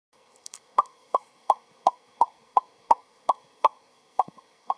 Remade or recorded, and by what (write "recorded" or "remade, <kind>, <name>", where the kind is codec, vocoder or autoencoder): remade, codec, SNAC